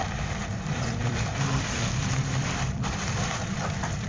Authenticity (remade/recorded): remade